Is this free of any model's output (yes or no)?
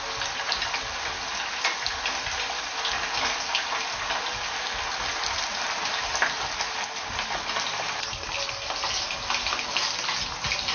yes